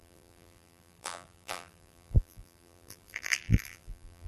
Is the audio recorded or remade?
remade